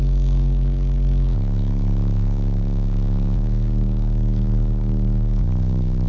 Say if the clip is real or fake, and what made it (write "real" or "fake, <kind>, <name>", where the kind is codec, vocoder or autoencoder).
fake, codec, DAC